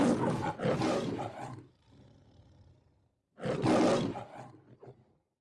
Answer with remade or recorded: recorded